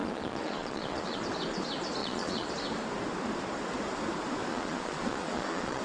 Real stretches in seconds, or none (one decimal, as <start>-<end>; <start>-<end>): 1.2-2.0; 2.5-4.5